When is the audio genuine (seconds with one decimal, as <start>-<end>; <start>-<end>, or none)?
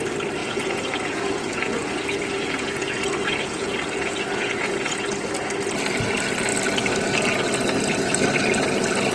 0.0-0.4; 5.0-9.1